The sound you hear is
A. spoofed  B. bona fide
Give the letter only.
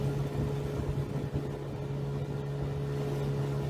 B